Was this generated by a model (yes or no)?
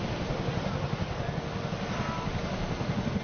no